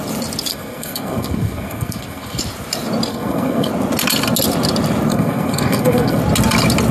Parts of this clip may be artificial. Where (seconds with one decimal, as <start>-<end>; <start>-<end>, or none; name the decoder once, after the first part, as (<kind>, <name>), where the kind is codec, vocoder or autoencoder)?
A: 0.5-2.4 (codec, SNAC); 3.1-3.7; 5.1-6.2